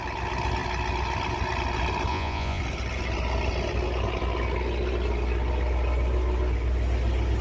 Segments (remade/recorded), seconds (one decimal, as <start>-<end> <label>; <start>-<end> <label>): 0.0-2.1 recorded; 2.1-2.6 remade; 2.6-7.4 recorded